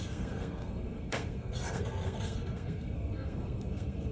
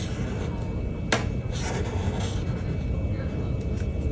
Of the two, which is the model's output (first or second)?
first